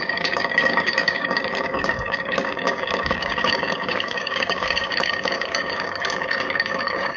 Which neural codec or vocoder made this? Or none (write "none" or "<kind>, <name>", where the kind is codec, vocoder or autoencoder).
codec, DAC